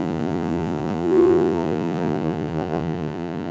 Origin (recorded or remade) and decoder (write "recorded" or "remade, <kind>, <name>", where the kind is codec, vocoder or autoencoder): remade, vocoder, Vocos